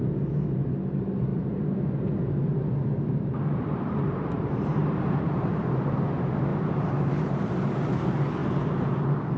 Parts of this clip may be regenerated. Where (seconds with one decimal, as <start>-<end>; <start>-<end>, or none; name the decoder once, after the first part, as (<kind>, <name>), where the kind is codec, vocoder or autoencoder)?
1.3-5.5 (vocoder, BigVGAN v2); 6.5-7.3; 8.4-8.9